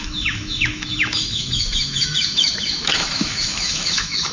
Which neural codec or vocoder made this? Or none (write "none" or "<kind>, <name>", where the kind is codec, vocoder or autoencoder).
autoencoder, DAC-VAE